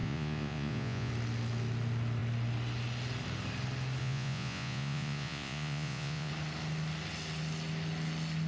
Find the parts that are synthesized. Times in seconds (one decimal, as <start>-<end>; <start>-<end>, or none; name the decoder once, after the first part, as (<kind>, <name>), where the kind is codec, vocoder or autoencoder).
0.0-1.1 (vocoder, Vocos); 4.0-6.3